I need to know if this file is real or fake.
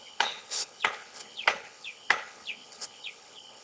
fake